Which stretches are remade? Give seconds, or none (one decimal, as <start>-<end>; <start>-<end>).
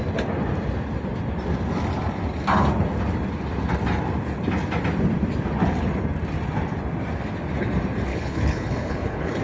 8.1-9.4